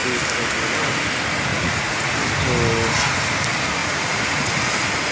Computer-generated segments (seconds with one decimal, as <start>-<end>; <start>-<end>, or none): 1.5-2.1; 3.8-4.5